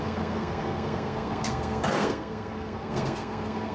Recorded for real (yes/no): no